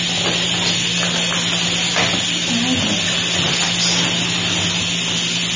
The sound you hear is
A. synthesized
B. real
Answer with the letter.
B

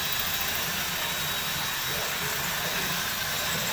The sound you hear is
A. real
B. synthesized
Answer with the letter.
A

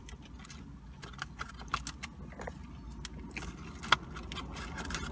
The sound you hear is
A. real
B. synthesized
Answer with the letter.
A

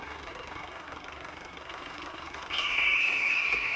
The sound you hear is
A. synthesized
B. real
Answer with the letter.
A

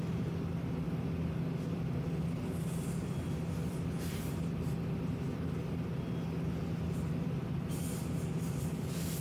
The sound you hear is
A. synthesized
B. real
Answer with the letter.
B